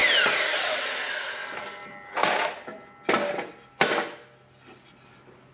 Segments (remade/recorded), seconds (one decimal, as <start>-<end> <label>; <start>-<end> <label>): 0.0-5.5 recorded